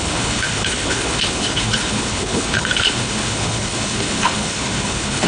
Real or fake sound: fake